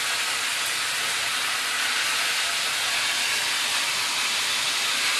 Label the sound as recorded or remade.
recorded